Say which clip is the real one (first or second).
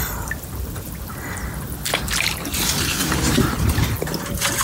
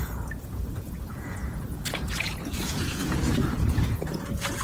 first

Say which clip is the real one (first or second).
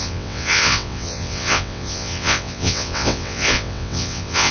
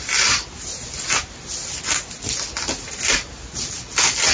second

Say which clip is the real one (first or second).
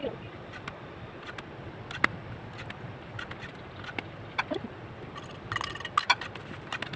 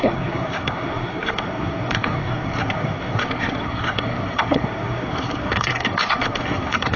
first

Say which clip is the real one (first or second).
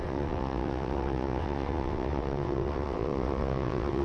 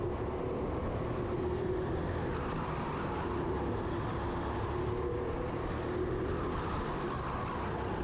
second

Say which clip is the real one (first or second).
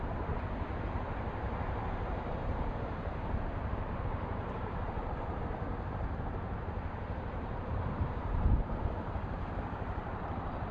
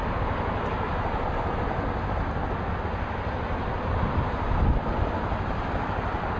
second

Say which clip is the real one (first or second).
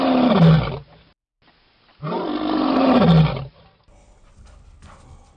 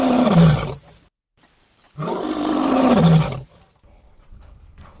first